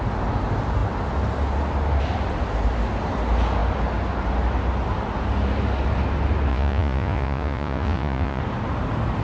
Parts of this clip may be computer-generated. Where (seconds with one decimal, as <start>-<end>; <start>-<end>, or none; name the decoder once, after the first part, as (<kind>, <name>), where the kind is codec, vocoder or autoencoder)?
6.5-8.4 (vocoder, Vocos)